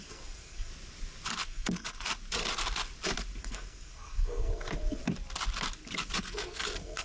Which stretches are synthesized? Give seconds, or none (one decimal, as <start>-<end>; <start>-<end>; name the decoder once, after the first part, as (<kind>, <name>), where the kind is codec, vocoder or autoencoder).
0.0-0.7 (codec, SNAC); 1.4-2.1; 3.4-5.0; 6.2-7.0